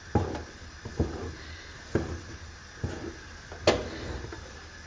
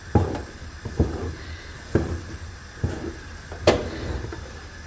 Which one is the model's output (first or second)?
second